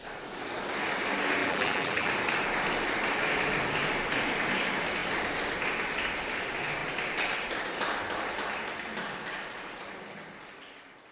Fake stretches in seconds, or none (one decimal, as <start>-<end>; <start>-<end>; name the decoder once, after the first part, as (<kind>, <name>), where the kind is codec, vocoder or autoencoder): 1.4-2.1 (vocoder, BigVGAN v2)